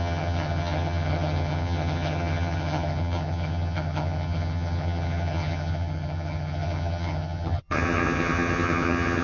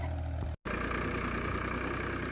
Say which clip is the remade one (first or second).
first